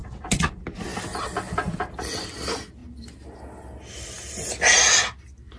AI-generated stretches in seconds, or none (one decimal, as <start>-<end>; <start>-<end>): 0.0-0.5